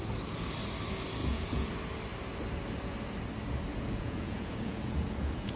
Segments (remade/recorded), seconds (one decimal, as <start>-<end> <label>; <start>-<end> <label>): 0.0-1.2 recorded; 1.2-1.7 remade; 1.7-3.7 recorded; 3.7-5.6 remade